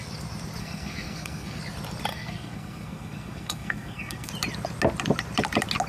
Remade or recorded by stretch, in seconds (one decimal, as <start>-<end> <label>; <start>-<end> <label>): 0.0-0.6 recorded; 0.6-1.6 remade; 1.6-2.1 recorded; 2.1-4.3 remade; 4.3-5.9 recorded

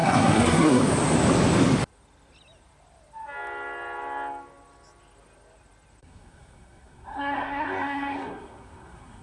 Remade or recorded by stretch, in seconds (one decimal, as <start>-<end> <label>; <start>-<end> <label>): 0.0-0.8 remade; 0.8-6.0 recorded; 6.0-9.2 remade

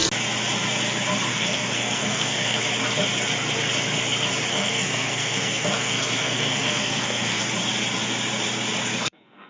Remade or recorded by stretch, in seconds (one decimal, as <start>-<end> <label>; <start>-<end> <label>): 0.0-1.3 recorded; 1.3-2.6 remade; 2.6-4.5 recorded; 4.5-7.4 remade; 7.4-8.9 recorded; 8.9-9.5 remade

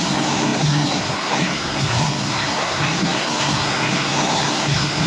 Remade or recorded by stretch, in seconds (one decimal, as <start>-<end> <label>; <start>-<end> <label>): 0.0-5.1 remade

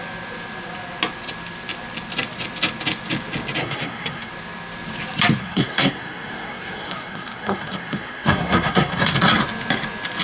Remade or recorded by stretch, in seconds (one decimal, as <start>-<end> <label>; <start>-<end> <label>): 0.0-3.6 recorded; 3.6-4.3 remade; 4.3-5.4 recorded; 5.4-9.1 remade; 9.1-10.2 recorded

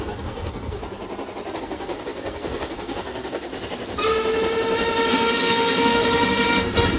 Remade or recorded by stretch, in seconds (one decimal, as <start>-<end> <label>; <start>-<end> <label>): 0.0-0.8 remade; 0.8-1.6 recorded; 1.6-3.5 remade; 3.5-5.1 recorded; 5.1-7.0 remade